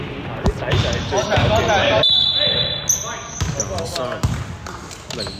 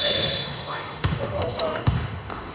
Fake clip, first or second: second